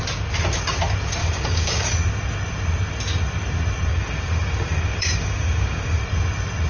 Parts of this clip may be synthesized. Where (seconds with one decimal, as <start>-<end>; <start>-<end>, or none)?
1.2-1.9; 3.9-6.0